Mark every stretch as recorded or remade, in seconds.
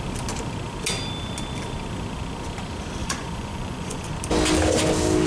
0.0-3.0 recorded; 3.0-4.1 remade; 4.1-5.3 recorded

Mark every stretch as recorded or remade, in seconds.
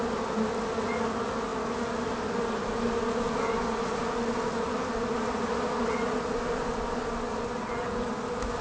0.0-8.6 recorded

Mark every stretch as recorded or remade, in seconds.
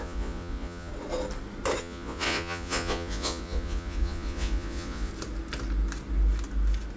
0.0-0.9 remade; 0.9-1.8 recorded; 1.8-5.1 remade; 5.1-7.0 recorded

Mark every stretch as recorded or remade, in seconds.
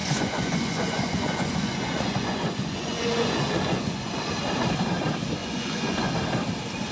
0.0-4.1 remade; 4.1-5.4 recorded; 5.4-6.1 remade; 6.1-6.9 recorded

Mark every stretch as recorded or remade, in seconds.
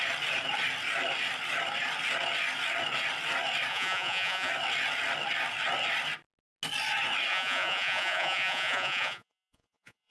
0.0-3.7 recorded; 3.7-4.5 remade; 4.5-7.3 recorded; 7.3-10.1 remade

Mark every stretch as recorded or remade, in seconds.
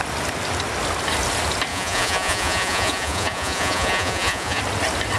0.0-1.7 recorded; 1.7-4.6 remade; 4.6-5.2 recorded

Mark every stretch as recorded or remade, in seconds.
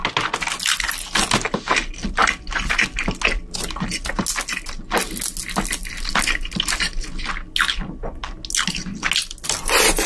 0.0-10.1 recorded